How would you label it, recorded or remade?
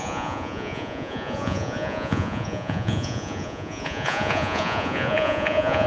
remade